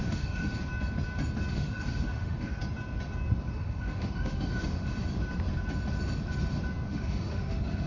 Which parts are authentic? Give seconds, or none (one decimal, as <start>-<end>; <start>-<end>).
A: 0.5-1.5; 2.6-3.5; 4.9-6.9